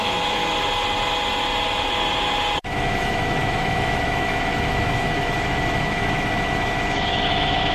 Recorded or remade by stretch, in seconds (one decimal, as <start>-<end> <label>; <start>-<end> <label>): 0.0-0.4 remade; 0.4-2.6 recorded; 2.6-7.7 remade